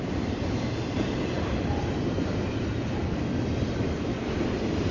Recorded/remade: remade